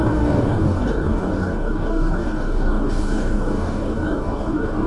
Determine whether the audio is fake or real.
fake